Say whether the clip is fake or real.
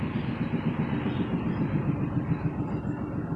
real